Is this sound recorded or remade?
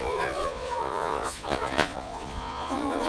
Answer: remade